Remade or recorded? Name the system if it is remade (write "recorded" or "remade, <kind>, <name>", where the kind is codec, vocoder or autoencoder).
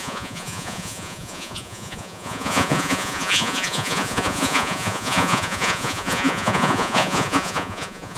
remade, vocoder, Vocos